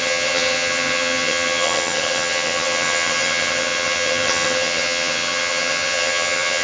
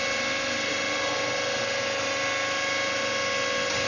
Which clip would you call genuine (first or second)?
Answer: second